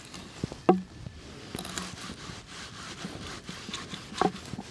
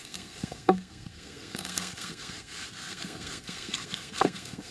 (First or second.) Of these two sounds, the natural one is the first